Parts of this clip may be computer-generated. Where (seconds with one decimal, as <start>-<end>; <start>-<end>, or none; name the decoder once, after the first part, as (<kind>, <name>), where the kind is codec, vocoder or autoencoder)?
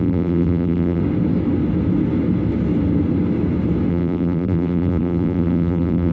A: 0.0-1.0 (vocoder, BigVGAN v2); 3.9-6.1